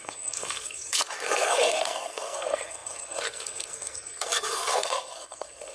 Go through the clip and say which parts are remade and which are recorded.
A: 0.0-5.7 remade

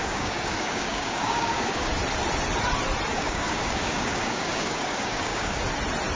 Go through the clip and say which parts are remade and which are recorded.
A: 0.0-1.9 remade; 1.9-3.1 recorded; 3.1-5.6 remade; 5.6-6.2 recorded

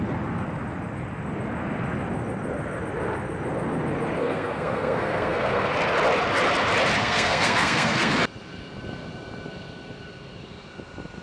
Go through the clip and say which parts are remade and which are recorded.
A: 0.0-4.2 recorded; 4.2-5.7 remade; 5.7-7.0 recorded; 7.0-8.1 remade; 8.1-11.2 recorded

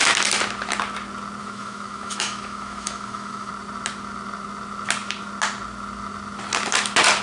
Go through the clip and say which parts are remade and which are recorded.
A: 0.0-1.4 recorded; 1.4-3.5 remade; 3.5-7.2 recorded

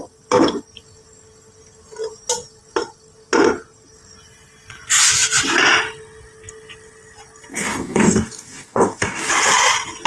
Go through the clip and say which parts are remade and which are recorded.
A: 0.0-7.5 recorded; 7.5-9.3 remade; 9.3-10.1 recorded

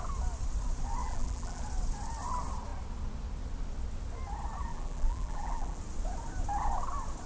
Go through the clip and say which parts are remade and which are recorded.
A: 0.0-1.0 recorded; 1.0-1.6 remade; 1.6-4.7 recorded; 4.7-5.8 remade; 5.8-7.3 recorded